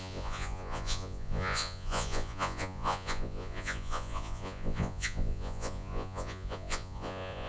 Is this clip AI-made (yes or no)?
yes